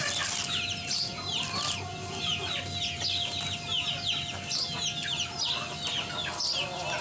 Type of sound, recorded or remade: recorded